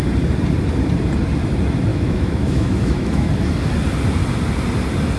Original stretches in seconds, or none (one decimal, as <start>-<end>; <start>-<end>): 0.0-1.9; 3.3-5.2